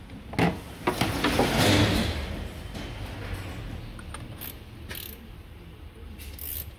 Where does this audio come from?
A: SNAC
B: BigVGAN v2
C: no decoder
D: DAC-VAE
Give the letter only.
C